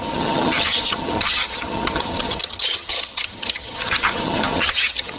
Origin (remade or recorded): remade